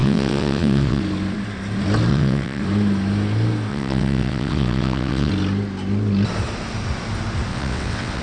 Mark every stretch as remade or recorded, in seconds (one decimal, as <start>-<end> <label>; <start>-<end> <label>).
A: 0.0-1.0 remade; 1.0-2.1 recorded; 2.1-2.6 remade; 2.6-3.7 recorded; 3.7-5.3 remade; 5.3-7.5 recorded; 7.5-8.2 remade